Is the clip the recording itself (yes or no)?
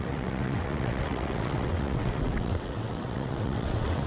no